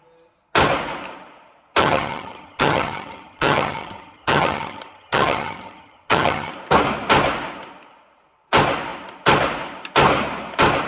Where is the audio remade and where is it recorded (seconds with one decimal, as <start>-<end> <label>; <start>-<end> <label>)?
0.0-1.8 recorded; 1.8-6.5 remade; 6.5-10.9 recorded